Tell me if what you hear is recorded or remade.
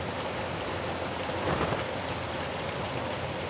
recorded